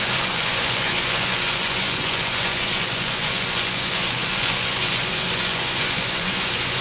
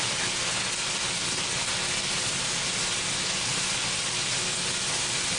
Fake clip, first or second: first